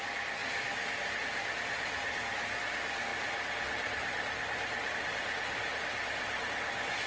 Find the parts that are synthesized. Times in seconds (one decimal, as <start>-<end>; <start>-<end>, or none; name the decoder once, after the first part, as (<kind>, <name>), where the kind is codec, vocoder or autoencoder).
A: none